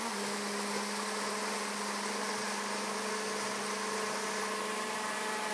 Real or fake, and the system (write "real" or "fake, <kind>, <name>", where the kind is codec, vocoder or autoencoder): real